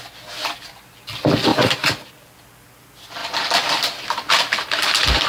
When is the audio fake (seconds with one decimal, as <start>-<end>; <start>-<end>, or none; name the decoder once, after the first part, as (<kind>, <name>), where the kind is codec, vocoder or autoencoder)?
1.5-2.1 (vocoder, BigVGAN v2); 3.2-5.3